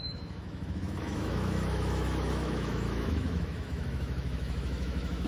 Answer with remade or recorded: remade